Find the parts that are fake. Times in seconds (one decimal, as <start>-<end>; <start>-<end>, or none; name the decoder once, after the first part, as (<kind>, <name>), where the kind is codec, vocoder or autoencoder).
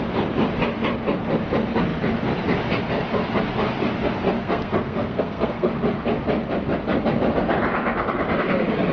4.4-5.7 (codec, SNAC)